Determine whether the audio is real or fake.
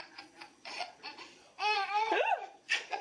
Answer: fake